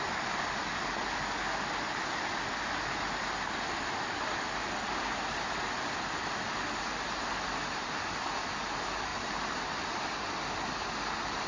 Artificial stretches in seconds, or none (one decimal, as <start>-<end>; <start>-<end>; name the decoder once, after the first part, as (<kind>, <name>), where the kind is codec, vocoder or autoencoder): none